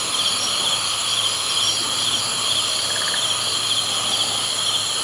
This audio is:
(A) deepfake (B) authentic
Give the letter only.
B